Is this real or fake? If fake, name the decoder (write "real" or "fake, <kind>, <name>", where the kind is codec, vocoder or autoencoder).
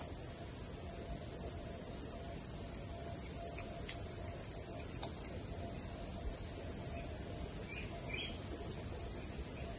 real